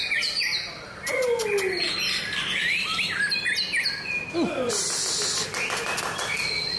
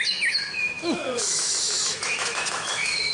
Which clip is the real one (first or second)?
first